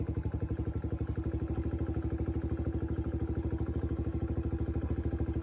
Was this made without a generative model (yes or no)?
yes